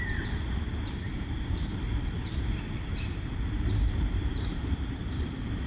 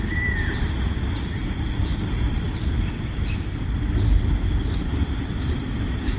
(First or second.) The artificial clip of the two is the first